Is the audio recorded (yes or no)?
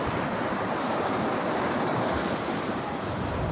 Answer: yes